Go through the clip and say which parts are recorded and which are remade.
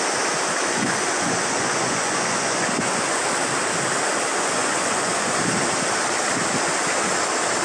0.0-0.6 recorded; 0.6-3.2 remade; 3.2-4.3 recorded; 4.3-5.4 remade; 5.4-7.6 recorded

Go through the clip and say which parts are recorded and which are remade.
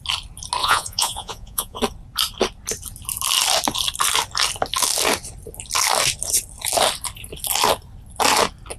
0.0-0.6 recorded; 0.6-1.8 remade; 1.8-8.8 recorded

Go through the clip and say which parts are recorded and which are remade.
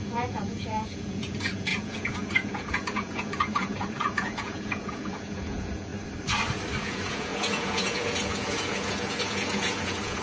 0.0-5.9 remade; 5.9-6.8 recorded; 6.8-10.2 remade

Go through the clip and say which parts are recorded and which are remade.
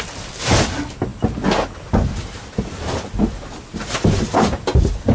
0.0-5.1 recorded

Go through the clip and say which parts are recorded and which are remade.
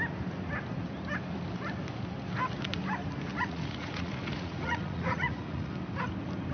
0.0-3.3 recorded; 3.3-5.7 remade; 5.7-6.5 recorded